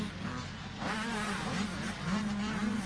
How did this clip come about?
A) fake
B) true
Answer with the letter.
A